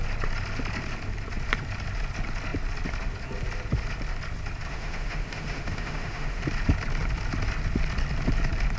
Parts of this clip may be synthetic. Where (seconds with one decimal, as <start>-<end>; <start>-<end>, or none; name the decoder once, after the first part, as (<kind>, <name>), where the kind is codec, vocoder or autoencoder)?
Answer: 4.7-6.4 (autoencoder, DAC-VAE)